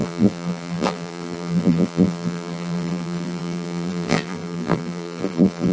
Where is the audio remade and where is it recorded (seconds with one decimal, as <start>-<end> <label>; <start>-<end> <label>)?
0.0-5.7 remade